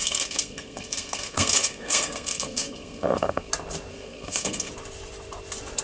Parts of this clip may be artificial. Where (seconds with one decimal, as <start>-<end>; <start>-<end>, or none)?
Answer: 0.0-3.5; 3.9-4.7